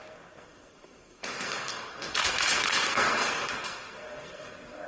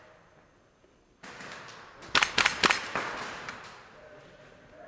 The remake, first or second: first